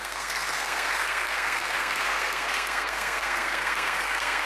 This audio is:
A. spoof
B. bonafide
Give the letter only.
A